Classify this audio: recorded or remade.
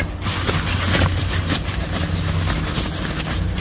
recorded